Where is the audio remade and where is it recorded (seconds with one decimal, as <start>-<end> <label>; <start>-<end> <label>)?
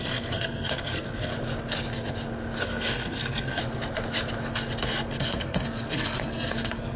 0.0-1.3 remade; 1.3-2.6 recorded; 2.6-3.6 remade; 3.6-5.2 recorded; 5.2-7.0 remade